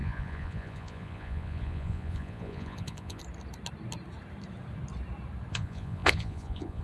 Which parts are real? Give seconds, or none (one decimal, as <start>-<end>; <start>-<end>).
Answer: 3.2-5.5